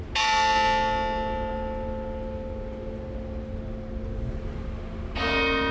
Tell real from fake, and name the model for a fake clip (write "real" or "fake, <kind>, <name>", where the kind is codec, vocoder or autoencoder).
real